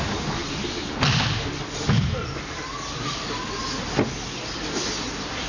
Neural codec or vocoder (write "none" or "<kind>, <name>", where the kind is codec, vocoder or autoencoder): none